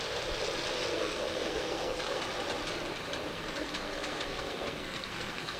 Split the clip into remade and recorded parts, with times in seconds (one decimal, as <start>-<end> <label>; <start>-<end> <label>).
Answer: 0.0-0.9 recorded; 0.9-2.2 remade; 2.2-3.3 recorded; 3.3-5.6 remade